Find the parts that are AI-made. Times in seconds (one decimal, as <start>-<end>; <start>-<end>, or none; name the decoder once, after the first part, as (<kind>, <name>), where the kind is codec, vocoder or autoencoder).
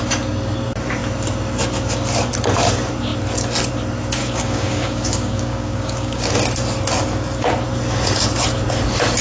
4.2-6.3 (codec, DAC)